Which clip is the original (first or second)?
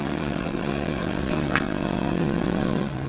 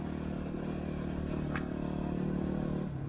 second